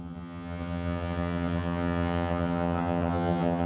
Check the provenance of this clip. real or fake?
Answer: fake